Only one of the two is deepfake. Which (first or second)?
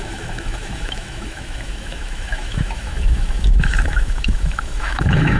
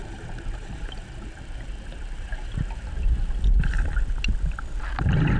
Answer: first